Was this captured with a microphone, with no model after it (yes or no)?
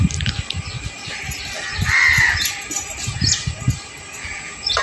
yes